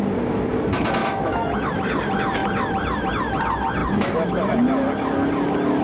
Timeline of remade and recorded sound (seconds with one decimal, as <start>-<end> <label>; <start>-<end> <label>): 0.0-1.0 recorded; 1.0-1.7 remade; 1.7-3.8 recorded; 3.8-4.4 remade; 4.4-5.8 recorded